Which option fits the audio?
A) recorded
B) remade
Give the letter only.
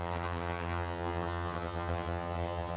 B